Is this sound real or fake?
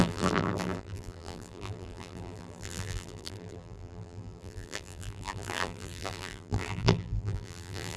fake